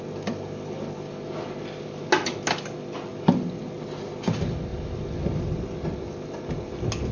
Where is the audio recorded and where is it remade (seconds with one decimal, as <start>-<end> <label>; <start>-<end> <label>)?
0.0-7.1 recorded